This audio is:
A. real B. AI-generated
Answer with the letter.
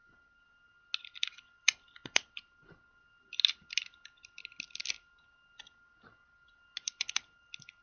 A